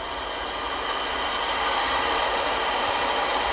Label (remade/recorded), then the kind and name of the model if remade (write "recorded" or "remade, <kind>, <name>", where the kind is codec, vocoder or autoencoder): recorded